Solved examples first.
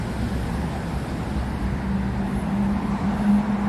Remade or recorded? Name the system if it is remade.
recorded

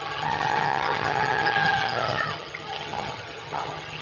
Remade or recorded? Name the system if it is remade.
remade, vocoder, HiFi-GAN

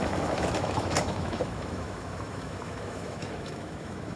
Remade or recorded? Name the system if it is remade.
remade, autoencoder, DAC-VAE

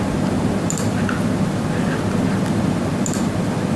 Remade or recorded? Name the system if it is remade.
recorded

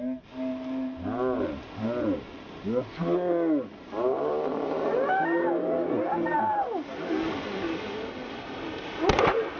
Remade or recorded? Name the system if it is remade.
recorded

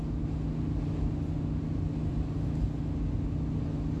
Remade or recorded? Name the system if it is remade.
recorded